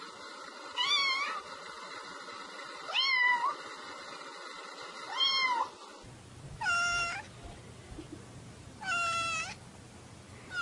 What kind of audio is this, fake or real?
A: real